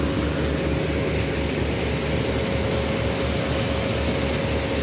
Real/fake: real